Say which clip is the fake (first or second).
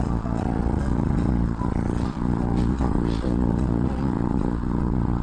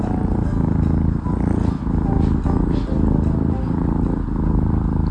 first